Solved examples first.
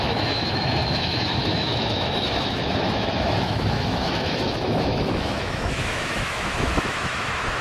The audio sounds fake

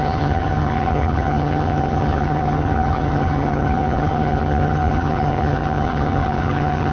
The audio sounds fake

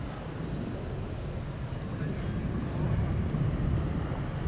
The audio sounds real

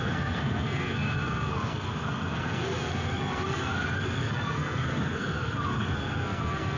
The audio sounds fake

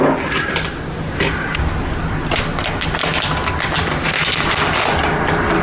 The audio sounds real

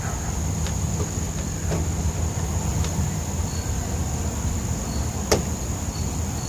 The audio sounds real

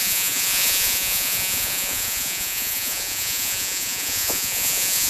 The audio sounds fake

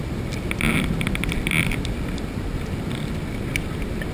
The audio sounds real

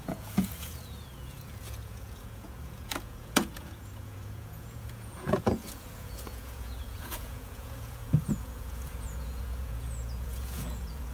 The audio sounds fake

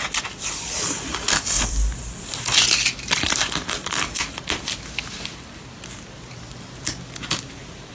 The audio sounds real